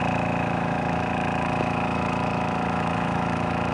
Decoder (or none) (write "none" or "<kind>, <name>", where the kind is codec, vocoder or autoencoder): autoencoder, DAC-VAE